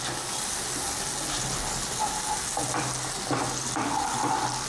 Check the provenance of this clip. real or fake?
real